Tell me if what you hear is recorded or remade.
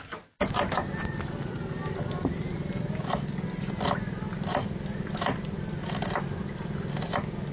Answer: recorded